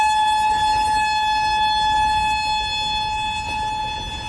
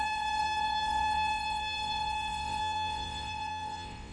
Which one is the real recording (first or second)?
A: first